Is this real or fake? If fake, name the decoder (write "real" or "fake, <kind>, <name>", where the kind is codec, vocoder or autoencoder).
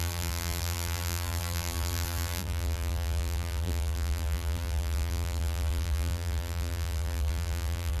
fake, vocoder, BigVGAN v2